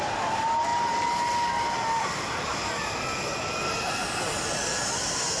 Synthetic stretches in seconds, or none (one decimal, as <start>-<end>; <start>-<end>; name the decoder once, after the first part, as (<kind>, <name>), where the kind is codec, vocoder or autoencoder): none